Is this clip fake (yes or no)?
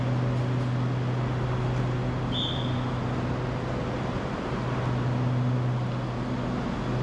no